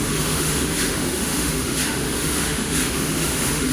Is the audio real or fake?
fake